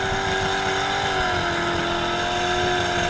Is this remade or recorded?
recorded